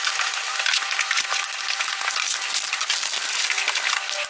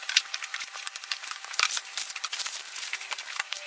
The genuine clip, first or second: first